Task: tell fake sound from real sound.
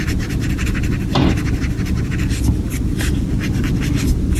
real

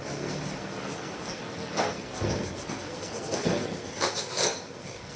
fake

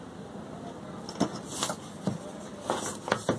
real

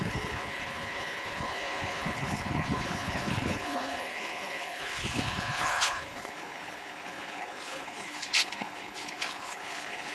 fake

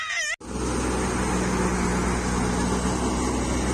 real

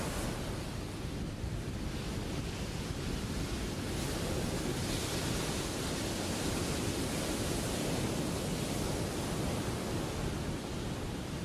real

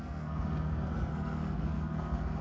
fake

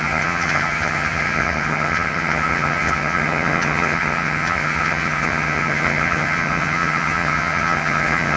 fake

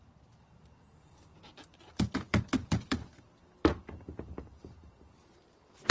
fake